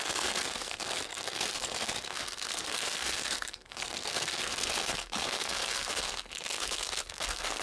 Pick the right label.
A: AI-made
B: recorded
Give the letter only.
A